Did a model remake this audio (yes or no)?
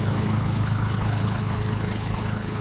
yes